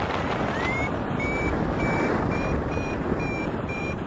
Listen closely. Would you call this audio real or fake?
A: fake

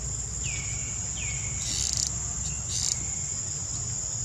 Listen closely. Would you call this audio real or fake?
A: real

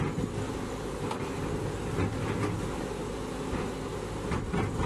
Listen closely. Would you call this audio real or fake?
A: real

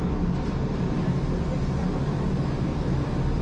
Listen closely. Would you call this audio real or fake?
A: real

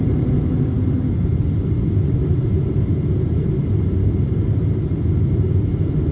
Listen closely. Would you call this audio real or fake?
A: real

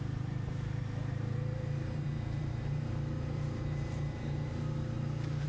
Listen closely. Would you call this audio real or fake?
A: fake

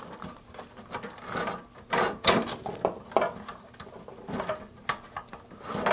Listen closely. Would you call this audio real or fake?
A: real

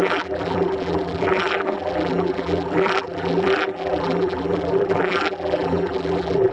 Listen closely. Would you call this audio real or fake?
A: fake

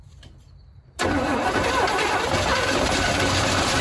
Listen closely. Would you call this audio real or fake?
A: fake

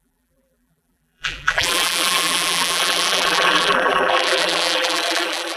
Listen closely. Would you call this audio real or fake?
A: fake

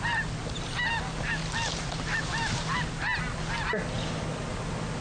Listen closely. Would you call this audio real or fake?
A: real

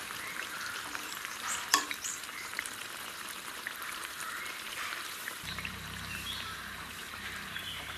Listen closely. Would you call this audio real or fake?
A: fake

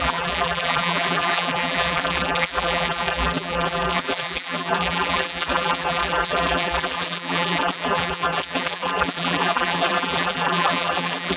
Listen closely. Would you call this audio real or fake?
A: fake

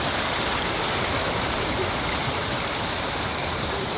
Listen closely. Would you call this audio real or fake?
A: fake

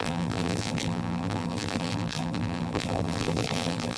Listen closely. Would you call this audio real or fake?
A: fake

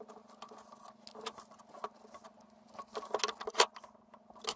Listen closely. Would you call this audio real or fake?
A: real